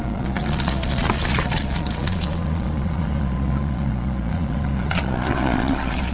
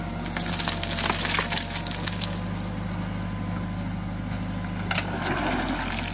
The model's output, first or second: first